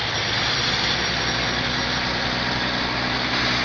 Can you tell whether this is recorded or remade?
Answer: recorded